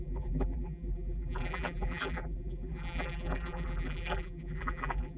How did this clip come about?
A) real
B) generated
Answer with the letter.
B